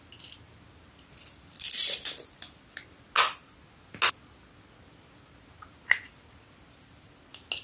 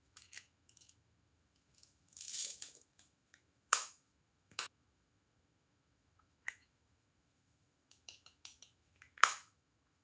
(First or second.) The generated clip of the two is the second